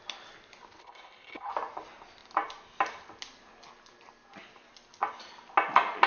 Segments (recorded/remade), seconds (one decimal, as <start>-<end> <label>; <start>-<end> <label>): 0.0-0.8 recorded; 0.8-1.5 remade; 1.5-6.1 recorded